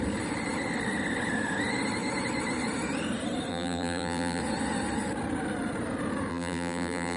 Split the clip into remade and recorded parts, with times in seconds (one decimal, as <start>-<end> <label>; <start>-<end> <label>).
0.0-3.5 recorded; 3.5-4.4 remade; 4.4-6.3 recorded; 6.3-7.2 remade